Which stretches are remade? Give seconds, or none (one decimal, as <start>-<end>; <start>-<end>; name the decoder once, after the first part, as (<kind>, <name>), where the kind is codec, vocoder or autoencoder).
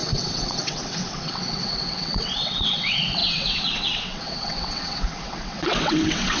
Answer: 0.0-6.4 (vocoder, WaveNeXt)